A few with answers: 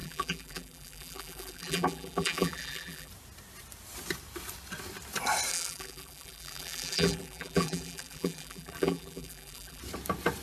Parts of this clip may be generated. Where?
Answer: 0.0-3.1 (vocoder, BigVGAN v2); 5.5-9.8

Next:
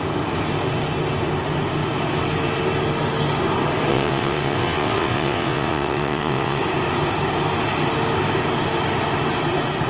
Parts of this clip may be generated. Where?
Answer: 3.9-6.6 (vocoder, WaveNeXt)

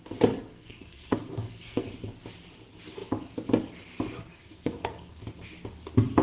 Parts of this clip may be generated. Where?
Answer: 0.5-1.9 (codec, SNAC); 4.3-5.2

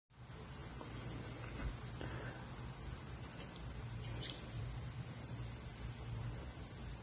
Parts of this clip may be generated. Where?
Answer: none

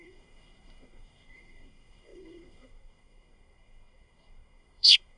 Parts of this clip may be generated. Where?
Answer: 0.0-5.2 (codec, SNAC)

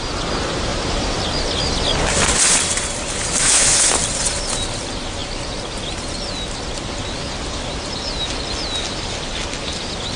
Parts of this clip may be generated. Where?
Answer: 3.4-3.9 (autoencoder, DAC-VAE)